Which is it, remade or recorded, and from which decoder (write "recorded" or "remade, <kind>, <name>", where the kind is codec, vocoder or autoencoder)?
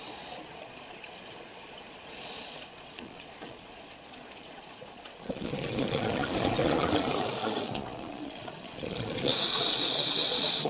remade, vocoder, Vocos